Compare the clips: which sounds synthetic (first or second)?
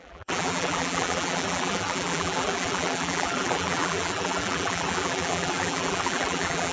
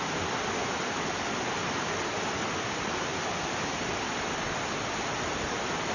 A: first